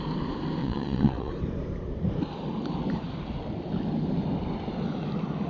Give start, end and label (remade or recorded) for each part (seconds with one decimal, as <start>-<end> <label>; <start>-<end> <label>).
0.0-0.6 recorded; 0.6-1.3 remade; 1.3-5.5 recorded